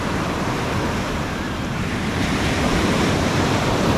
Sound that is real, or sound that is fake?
fake